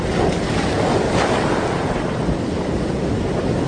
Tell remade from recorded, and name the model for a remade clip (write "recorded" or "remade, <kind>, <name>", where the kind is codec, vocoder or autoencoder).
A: recorded